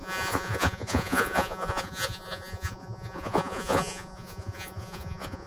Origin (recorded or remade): remade